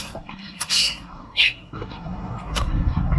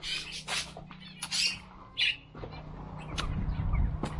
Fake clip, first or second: first